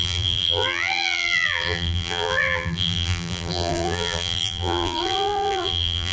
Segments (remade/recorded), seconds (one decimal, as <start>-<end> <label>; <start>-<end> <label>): 0.0-6.1 remade